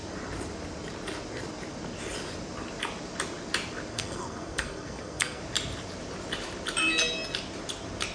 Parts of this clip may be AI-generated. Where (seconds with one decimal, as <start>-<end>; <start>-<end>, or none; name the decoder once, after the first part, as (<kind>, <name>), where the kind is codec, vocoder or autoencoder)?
3.9-5.4 (codec, SNAC)